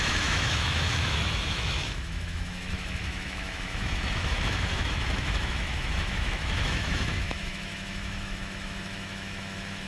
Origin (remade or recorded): remade